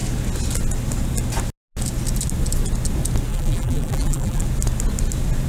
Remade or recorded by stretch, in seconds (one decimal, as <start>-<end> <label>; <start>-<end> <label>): 0.0-3.3 recorded; 3.3-4.4 remade; 4.4-5.5 recorded